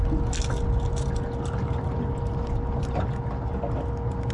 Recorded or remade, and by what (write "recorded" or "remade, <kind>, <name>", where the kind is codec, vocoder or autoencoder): recorded